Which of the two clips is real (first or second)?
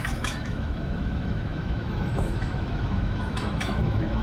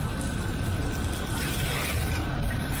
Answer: second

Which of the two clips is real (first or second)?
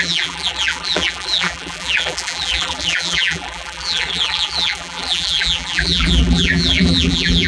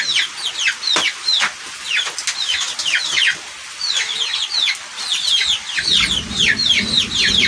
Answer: second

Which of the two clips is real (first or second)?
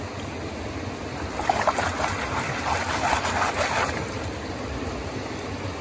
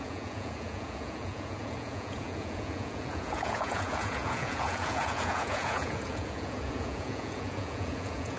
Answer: first